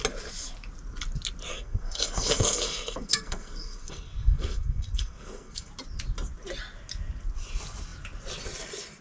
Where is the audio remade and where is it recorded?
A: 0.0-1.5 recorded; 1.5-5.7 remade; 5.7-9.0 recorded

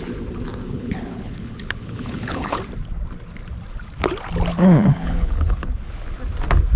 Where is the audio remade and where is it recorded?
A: 0.0-0.6 recorded; 0.6-2.6 remade; 2.6-4.5 recorded; 4.5-5.9 remade; 5.9-6.8 recorded

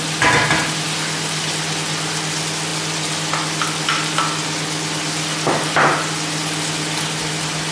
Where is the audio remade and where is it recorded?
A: 0.0-7.7 recorded

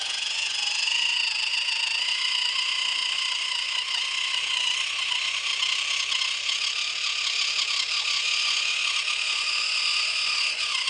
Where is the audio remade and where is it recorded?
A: 0.0-0.9 remade; 0.9-2.1 recorded; 2.1-5.5 remade; 5.5-8.0 recorded; 8.0-10.9 remade

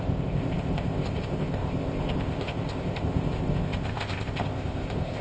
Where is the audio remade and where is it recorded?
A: 0.0-5.2 remade